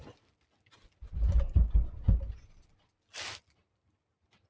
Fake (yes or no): no